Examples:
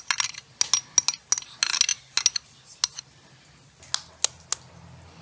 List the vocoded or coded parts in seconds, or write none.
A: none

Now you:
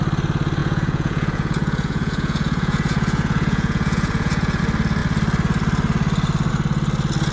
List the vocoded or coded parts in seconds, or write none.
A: 0.6-4.6

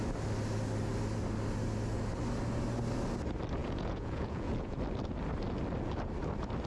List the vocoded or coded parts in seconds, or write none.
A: 3.6-4.8

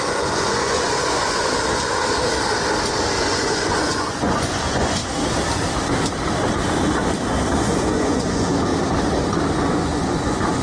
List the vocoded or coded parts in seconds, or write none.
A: 0.0-1.5; 3.2-5.0; 7.6-8.7; 9.7-10.6

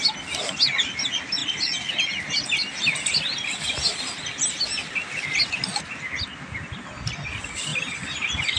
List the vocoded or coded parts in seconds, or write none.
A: none

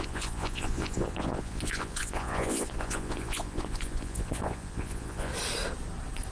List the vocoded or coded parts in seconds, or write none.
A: 0.0-5.3